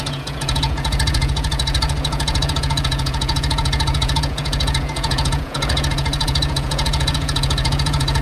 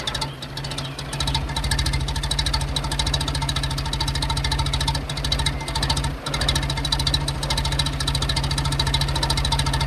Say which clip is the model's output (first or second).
first